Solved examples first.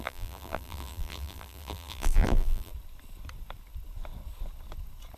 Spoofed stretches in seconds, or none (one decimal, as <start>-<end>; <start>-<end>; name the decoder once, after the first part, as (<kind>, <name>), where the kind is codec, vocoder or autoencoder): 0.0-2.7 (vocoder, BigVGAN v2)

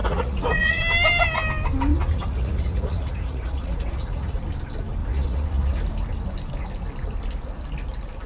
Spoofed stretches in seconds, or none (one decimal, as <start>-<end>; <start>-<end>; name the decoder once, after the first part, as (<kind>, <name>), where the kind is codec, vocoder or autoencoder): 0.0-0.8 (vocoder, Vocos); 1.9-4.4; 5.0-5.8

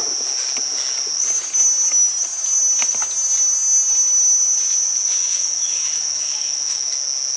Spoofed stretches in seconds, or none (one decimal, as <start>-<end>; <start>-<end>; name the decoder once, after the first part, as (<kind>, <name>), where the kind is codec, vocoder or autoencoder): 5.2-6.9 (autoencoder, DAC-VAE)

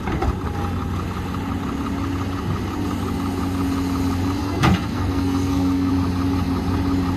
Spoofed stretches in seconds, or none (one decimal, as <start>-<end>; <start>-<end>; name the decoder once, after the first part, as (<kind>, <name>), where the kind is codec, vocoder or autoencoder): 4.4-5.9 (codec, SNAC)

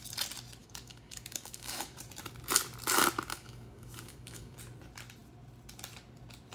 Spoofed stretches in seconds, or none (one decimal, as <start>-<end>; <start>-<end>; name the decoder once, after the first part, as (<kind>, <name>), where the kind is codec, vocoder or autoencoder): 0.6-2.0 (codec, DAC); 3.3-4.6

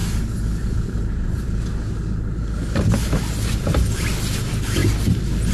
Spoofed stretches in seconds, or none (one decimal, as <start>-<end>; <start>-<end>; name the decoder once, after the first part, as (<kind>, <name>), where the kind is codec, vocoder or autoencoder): 0.0-1.6 (vocoder, BigVGAN v2)